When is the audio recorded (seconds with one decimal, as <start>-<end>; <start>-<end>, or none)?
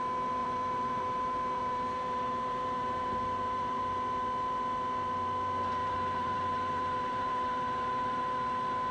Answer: 0.0-0.4; 3.8-5.8; 8.2-8.9